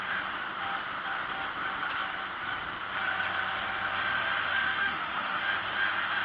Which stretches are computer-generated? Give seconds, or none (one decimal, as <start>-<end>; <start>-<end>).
4.1-5.5